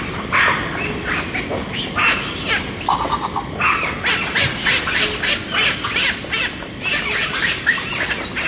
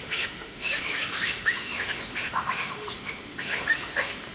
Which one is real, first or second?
first